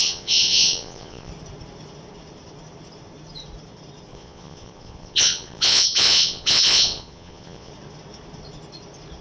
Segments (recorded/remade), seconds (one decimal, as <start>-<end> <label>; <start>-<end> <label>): 0.0-1.3 remade; 1.3-4.1 recorded; 4.1-7.7 remade; 7.7-9.2 recorded